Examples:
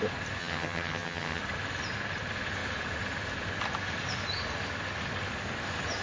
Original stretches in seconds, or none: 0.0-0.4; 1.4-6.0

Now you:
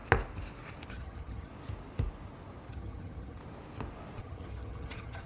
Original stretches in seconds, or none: 0.0-0.9; 1.5-2.7; 3.4-4.2

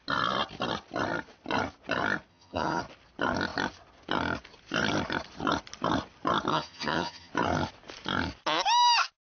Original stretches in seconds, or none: 0.0-2.3; 2.8-6.5; 7.3-9.4

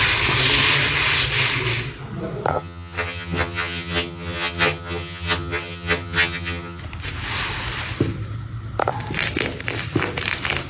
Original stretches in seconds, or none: 0.0-2.5; 6.8-10.7